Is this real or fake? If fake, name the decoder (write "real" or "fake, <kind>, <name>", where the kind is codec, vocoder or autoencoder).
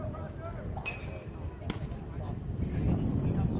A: real